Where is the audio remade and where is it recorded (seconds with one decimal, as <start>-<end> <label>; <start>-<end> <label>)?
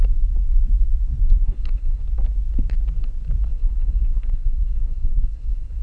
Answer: 0.0-1.2 recorded; 1.2-2.0 remade; 2.0-3.5 recorded; 3.5-5.8 remade